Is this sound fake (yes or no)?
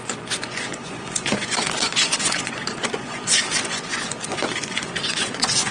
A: yes